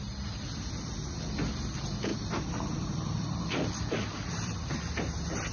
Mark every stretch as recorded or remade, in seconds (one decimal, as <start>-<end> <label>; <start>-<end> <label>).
0.0-2.1 recorded; 2.1-4.7 remade; 4.7-5.5 recorded